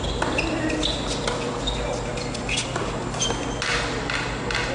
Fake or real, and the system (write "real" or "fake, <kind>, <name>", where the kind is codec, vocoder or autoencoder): real